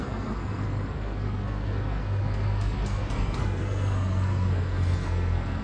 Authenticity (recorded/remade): remade